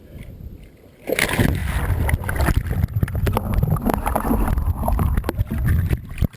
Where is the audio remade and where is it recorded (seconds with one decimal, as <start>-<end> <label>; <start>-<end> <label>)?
0.0-6.4 recorded